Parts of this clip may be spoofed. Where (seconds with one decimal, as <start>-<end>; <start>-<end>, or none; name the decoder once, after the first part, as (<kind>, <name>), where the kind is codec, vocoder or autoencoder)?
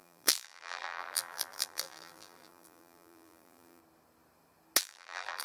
0.0-3.8 (vocoder, BigVGAN v2); 4.8-5.4